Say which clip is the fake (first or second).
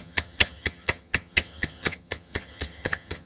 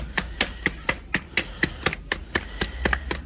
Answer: first